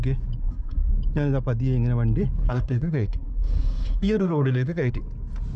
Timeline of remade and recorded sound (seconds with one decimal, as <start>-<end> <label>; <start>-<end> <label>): 0.0-0.4 recorded; 0.4-0.9 remade; 0.9-2.4 recorded; 2.4-4.9 remade; 4.9-5.6 recorded